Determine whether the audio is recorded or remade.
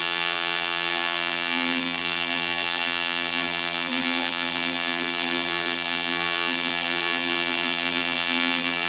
remade